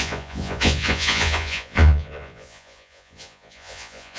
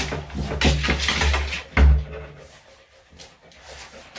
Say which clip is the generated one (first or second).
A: first